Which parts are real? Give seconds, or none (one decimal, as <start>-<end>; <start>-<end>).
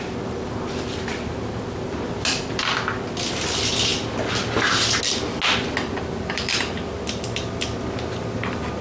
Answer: 0.0-8.8